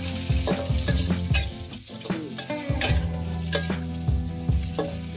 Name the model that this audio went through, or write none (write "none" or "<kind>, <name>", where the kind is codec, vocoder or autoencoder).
none